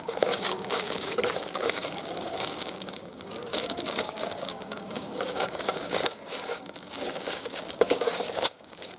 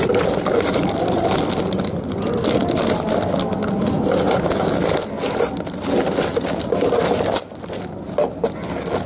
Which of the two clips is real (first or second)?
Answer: second